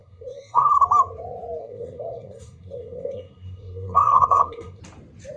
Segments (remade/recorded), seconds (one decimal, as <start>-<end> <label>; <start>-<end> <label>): 0.0-0.7 remade; 0.7-1.6 recorded; 1.6-4.8 remade; 4.8-5.4 recorded